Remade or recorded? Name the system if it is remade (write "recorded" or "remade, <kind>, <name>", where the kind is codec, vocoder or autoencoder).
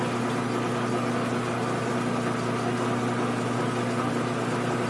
recorded